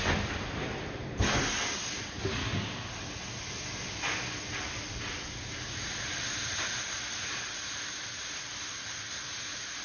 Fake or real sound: real